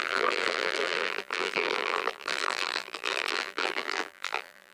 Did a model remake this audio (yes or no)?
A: yes